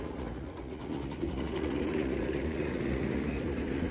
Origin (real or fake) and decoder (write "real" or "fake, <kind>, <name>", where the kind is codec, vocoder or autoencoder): fake, vocoder, Vocos